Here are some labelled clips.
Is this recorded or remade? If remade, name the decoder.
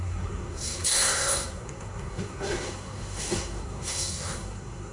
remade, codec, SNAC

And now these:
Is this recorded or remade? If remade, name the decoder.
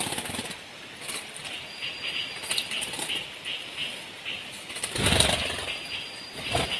recorded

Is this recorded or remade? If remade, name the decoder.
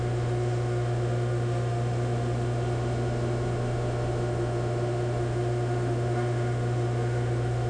remade, autoencoder, DAC-VAE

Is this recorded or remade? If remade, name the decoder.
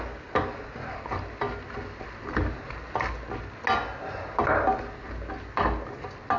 recorded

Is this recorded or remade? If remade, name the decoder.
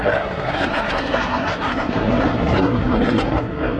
remade, codec, SNAC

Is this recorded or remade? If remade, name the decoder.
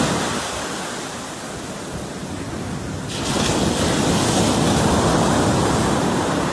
recorded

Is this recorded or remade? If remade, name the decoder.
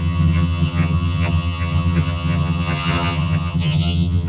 remade, vocoder, HiFi-GAN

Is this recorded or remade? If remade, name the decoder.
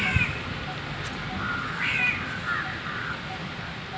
recorded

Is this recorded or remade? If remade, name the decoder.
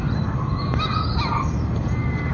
remade, vocoder, BigVGAN v2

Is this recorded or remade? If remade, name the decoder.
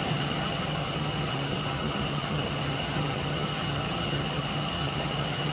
remade, vocoder, HiFi-GAN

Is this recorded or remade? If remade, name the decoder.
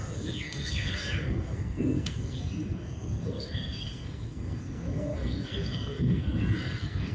remade, codec, SNAC